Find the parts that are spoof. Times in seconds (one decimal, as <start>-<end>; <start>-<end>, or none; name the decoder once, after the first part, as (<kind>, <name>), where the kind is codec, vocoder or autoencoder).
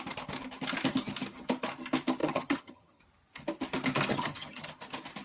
2.2-3.0 (vocoder, HiFi-GAN); 4.1-4.7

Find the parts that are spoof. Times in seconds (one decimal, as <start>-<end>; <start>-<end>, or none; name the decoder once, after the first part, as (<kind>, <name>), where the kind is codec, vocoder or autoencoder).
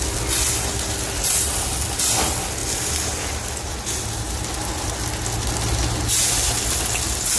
none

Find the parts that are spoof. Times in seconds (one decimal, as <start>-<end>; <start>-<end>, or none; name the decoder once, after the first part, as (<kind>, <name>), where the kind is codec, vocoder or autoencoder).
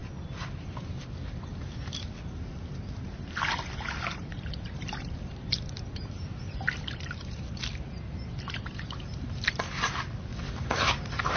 0.0-1.5 (vocoder, BigVGAN v2); 4.1-8.3